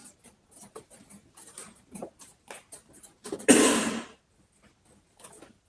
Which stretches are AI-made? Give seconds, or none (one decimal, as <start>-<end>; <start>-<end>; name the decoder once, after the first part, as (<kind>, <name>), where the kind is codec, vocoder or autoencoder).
none